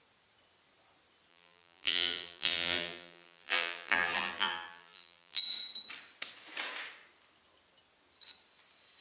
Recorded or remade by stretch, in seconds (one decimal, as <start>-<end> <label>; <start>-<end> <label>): 0.0-1.3 recorded; 1.3-5.4 remade; 5.4-9.0 recorded